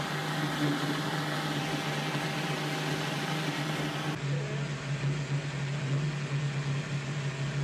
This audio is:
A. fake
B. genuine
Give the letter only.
B